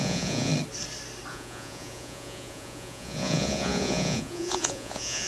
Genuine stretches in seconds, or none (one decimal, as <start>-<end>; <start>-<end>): 0.5-1.3